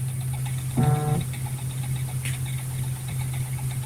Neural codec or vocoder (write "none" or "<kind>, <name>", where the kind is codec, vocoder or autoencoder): none